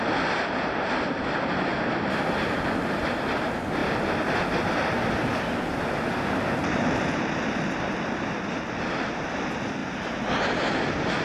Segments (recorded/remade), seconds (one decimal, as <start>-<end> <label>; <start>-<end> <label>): 0.0-1.7 remade; 1.7-2.9 recorded; 2.9-3.8 remade; 3.8-9.0 recorded; 9.0-9.8 remade; 9.8-10.4 recorded; 10.4-11.2 remade